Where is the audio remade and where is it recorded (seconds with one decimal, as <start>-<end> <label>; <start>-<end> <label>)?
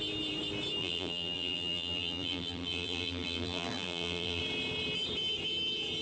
0.0-0.8 recorded; 0.8-4.4 remade; 4.4-6.0 recorded